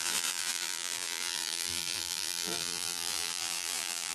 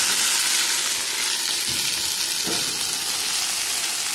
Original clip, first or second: second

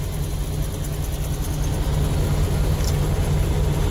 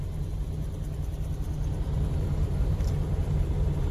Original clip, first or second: first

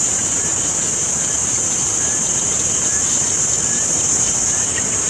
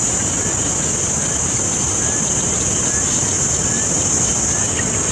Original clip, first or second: second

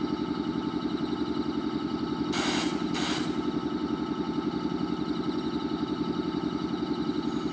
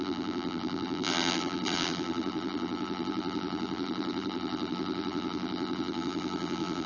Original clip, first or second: first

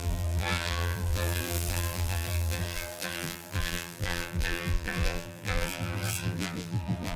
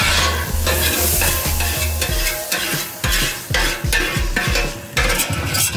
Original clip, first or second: second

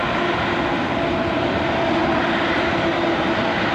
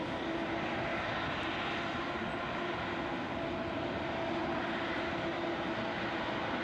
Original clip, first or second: second